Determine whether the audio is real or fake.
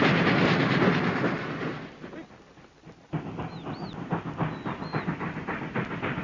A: real